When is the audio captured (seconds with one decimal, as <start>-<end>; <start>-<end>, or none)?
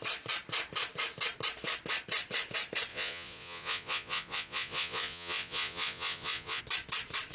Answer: 0.0-2.9; 6.6-7.3